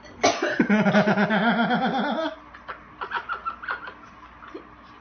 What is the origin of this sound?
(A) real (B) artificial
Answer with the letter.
A